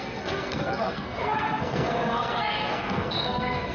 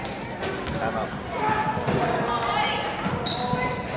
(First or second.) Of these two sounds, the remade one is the first